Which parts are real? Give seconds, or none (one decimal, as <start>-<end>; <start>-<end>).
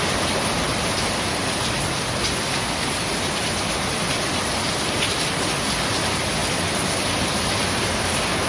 0.0-8.5